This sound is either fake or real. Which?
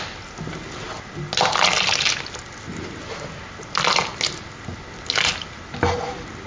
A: real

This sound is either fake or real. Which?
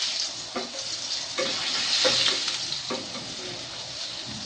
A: real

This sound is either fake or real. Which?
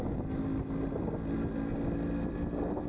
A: real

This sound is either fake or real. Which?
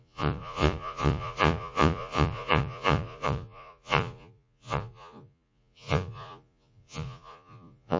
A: fake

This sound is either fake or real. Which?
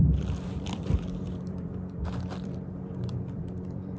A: fake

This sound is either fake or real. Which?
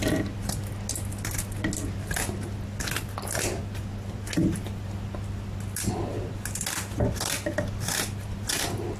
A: real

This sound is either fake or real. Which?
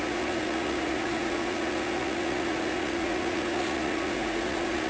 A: fake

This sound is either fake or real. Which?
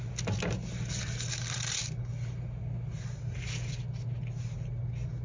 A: real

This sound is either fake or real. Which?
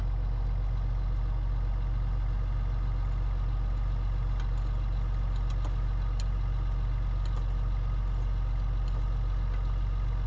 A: real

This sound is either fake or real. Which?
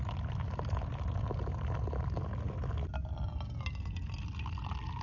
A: real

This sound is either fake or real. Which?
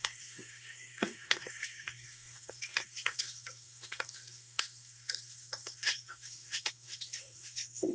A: fake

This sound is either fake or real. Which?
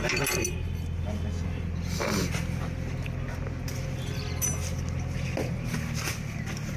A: real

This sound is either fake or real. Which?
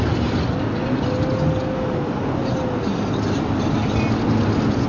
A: real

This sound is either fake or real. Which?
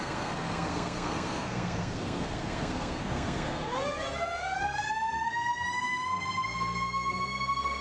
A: fake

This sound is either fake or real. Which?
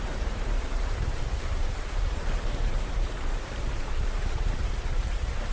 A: fake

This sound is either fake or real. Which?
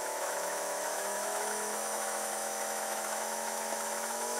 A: fake